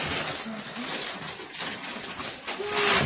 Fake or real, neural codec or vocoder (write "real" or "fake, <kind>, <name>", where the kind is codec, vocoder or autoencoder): real